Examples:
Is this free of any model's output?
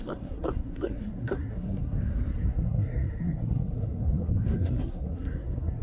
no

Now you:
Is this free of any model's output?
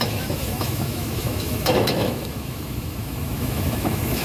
no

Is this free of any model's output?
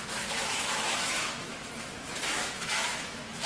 no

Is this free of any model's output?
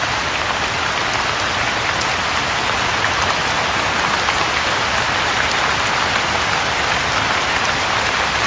yes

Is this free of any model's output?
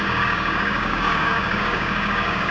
no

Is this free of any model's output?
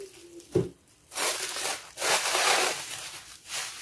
yes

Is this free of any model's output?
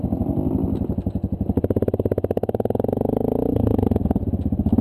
yes